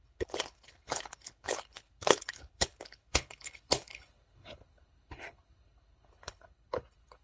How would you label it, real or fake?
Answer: fake